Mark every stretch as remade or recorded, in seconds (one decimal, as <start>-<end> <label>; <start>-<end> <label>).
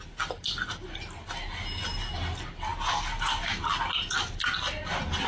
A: 0.0-5.3 recorded